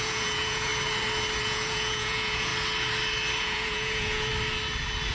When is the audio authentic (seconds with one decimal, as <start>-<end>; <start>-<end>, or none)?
0.7-1.4; 2.5-3.4; 4.3-5.1